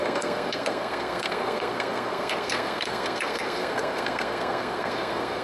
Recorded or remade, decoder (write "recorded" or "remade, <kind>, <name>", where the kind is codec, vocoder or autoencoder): remade, codec, SNAC